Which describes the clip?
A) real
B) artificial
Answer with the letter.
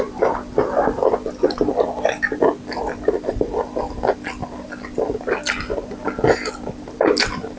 A